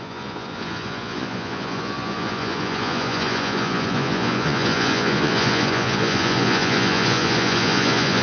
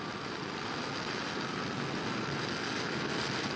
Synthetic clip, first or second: first